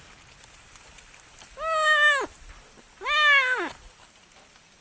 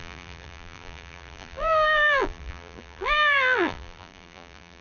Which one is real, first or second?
first